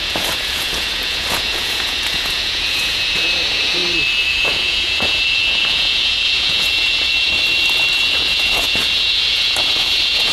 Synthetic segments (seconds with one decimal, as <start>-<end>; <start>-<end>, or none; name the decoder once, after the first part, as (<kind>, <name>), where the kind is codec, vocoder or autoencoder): 0.0-3.8 (vocoder, Vocos); 4.4-7.3; 7.9-10.3